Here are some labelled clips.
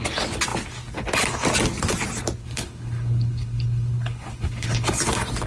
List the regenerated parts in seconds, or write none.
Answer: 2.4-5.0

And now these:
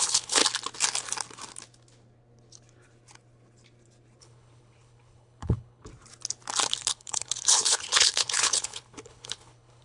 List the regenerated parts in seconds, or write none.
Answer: 0.0-0.4; 4.2-5.9; 6.8-9.8

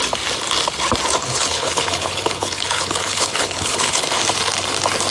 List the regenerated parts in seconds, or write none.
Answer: 1.2-4.0

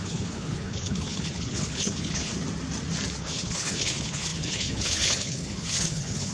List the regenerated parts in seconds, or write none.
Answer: 0.0-2.3; 3.2-6.3

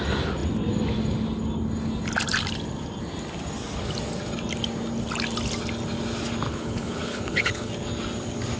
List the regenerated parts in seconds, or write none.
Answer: 6.5-7.7

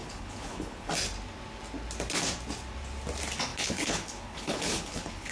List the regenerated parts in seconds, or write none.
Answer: 0.0-0.9; 3.5-5.3